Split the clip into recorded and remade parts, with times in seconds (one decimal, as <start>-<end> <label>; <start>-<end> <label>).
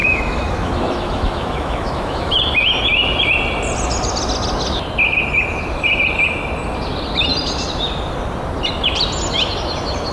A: 0.0-2.4 remade; 2.4-10.1 recorded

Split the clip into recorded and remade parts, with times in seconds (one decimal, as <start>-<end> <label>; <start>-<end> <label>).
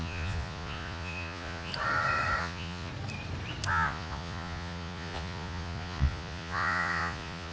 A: 0.0-1.7 remade; 1.7-2.4 recorded; 2.4-2.9 remade; 2.9-3.7 recorded; 3.7-7.5 remade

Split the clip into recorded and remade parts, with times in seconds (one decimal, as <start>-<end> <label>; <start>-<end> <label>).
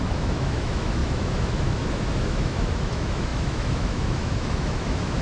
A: 0.0-5.2 remade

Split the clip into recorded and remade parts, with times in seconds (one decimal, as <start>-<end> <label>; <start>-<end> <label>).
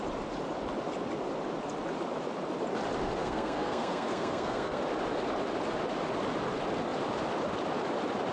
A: 0.0-3.2 recorded; 3.2-4.8 remade; 4.8-8.3 recorded